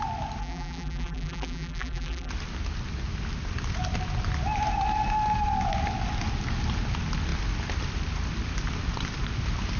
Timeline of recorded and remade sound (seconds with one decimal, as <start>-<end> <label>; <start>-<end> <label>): 0.0-0.4 recorded; 0.4-2.3 remade; 2.3-9.8 recorded